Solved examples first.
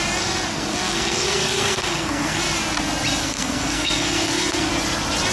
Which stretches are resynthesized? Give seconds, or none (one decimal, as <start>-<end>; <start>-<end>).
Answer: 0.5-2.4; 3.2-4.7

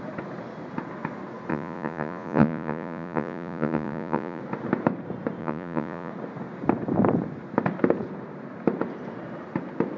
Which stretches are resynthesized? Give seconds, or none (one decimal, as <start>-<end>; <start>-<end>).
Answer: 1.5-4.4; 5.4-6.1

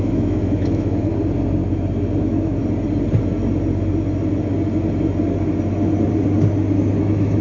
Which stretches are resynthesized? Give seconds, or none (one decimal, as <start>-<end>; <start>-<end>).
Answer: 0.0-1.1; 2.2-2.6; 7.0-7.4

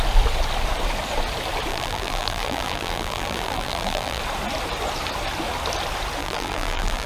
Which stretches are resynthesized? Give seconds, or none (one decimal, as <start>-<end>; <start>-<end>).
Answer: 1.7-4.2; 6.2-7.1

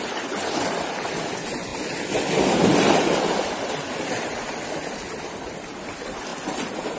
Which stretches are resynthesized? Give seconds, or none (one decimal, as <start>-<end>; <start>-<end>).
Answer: none